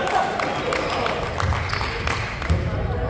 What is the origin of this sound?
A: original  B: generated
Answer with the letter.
A